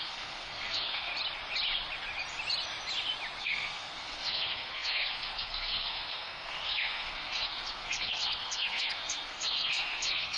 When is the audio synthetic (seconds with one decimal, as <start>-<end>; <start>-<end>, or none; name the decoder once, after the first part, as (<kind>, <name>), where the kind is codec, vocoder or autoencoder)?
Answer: 0.0-1.1 (codec, SNAC); 3.4-10.4